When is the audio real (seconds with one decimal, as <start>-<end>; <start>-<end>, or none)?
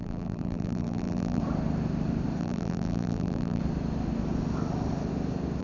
1.4-2.4; 3.6-5.6